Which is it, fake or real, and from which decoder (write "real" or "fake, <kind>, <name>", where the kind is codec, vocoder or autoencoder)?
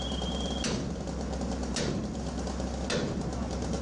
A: real